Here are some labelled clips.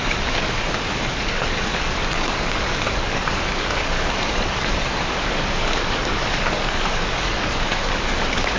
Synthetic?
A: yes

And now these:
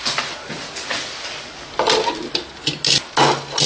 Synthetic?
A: no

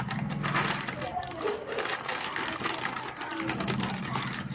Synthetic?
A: no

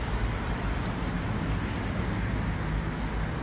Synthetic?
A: no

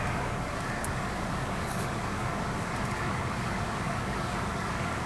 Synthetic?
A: yes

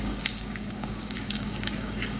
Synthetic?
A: yes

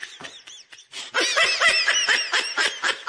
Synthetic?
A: no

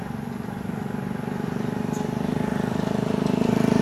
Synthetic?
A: no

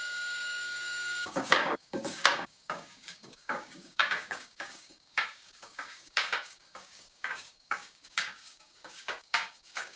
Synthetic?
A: yes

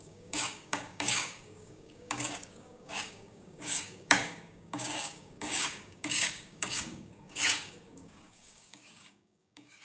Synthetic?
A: yes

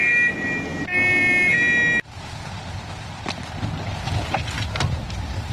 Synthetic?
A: no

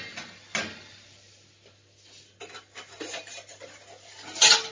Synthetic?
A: no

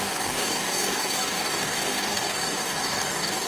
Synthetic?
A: yes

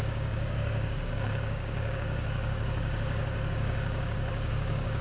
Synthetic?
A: yes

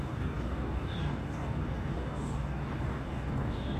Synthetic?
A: yes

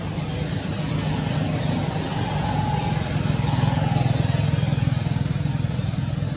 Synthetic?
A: no